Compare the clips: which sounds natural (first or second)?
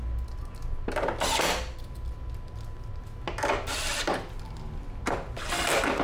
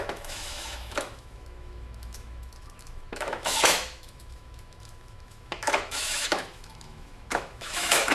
first